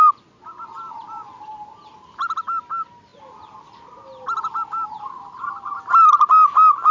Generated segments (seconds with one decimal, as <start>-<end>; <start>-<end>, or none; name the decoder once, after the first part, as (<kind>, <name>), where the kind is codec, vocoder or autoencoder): none